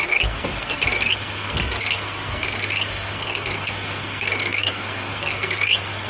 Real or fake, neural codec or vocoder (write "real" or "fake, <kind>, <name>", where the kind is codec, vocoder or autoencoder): fake, codec, SNAC